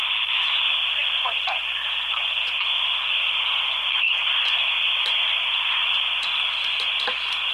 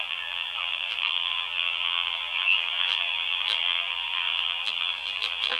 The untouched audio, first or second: first